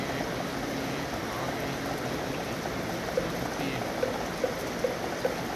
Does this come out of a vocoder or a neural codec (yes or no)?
no